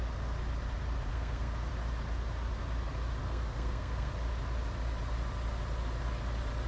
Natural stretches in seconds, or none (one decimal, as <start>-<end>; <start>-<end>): 0.0-1.1; 1.7-3.2; 4.1-6.7